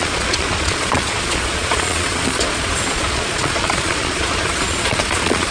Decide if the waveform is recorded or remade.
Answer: remade